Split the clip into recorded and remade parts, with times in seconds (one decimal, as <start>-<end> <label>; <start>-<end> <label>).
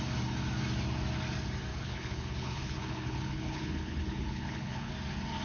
0.0-1.7 recorded; 1.7-4.9 remade; 4.9-5.4 recorded